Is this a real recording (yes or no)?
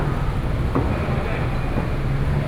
yes